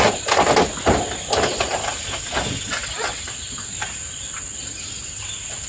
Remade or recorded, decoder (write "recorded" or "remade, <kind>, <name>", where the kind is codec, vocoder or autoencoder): recorded